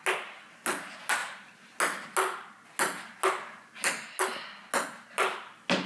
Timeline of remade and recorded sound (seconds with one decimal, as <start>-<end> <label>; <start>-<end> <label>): 0.0-5.9 recorded